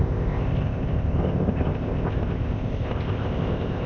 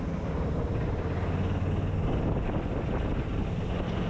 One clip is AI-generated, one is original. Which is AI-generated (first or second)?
first